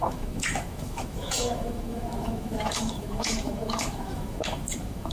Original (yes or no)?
no